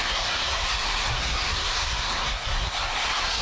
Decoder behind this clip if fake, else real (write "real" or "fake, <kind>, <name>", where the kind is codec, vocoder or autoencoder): fake, codec, SNAC